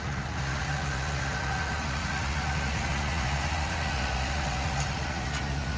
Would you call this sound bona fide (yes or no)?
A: no